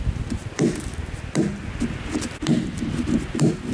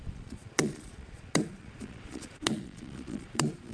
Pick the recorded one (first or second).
first